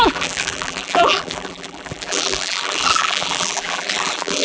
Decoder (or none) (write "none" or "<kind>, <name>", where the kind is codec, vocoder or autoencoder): vocoder, BigVGAN v2